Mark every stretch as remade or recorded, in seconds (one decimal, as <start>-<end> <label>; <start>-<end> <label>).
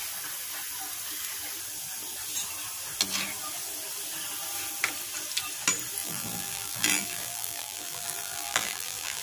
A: 0.0-6.0 recorded; 6.0-9.2 remade